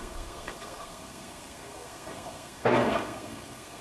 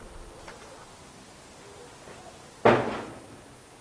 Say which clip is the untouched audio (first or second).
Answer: second